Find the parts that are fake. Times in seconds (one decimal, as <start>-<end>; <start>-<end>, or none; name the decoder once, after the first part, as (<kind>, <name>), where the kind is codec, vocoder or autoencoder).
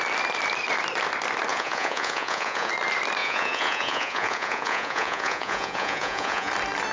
1.5-2.7 (vocoder, Vocos); 3.2-6.5